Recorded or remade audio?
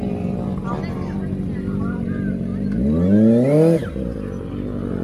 recorded